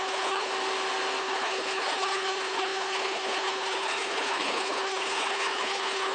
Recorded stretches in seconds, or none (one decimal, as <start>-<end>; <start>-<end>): 0.5-1.2